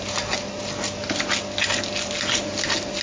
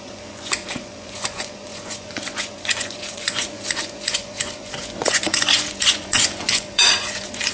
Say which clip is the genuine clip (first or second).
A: first